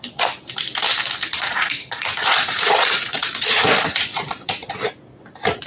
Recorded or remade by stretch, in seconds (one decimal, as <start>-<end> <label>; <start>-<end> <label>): 0.0-1.3 recorded; 1.3-4.7 remade; 4.7-5.7 recorded